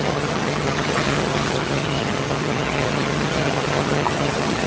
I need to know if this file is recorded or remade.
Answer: remade